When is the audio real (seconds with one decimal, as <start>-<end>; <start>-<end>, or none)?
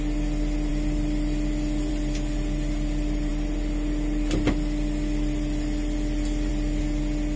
0.0-7.4